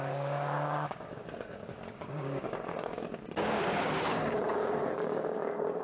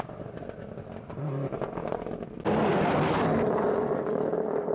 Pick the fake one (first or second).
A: first